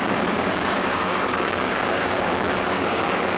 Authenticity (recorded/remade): remade